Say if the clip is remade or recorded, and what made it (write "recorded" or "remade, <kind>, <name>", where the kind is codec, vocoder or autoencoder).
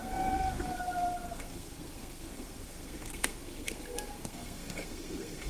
remade, codec, SNAC